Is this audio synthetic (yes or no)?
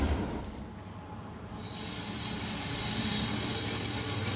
no